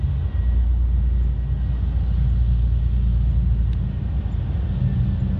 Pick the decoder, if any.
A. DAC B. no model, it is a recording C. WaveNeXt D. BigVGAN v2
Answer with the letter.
B